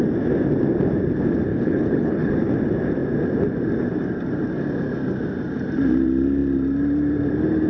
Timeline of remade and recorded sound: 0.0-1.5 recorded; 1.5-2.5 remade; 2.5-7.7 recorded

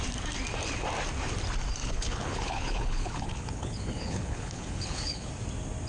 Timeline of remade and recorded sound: 0.0-1.8 recorded; 1.8-5.3 remade; 5.3-5.9 recorded

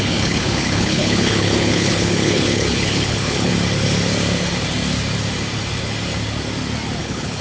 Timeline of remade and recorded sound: 0.0-3.5 remade; 3.5-7.0 recorded; 7.0-7.4 remade

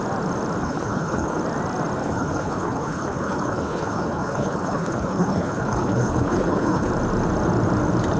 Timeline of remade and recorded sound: 0.0-0.6 recorded; 0.6-1.4 remade; 1.4-2.0 recorded; 2.0-6.9 remade; 6.9-8.2 recorded

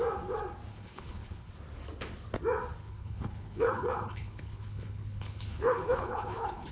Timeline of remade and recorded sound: 0.0-0.7 recorded; 0.7-1.5 remade; 1.5-2.8 recorded; 2.8-6.7 remade

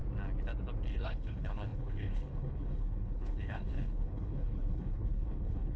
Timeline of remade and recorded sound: 0.0-0.9 recorded; 0.9-5.8 remade